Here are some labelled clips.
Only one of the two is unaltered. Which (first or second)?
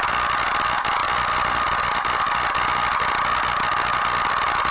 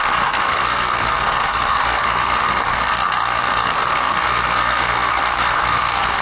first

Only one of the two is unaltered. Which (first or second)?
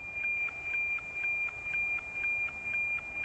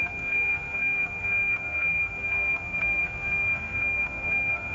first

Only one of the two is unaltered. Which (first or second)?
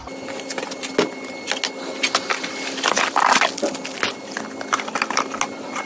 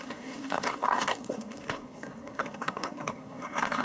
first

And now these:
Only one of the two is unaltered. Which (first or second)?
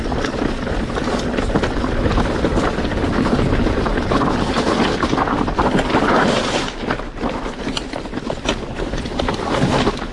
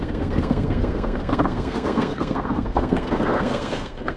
first